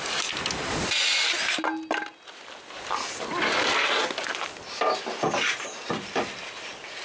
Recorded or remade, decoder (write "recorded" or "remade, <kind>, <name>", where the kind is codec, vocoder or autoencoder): recorded